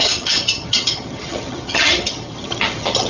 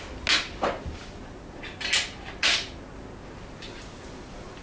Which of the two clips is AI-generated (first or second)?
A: first